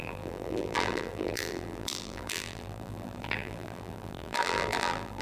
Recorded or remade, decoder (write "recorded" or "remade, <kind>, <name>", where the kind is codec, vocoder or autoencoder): remade, vocoder, BigVGAN v2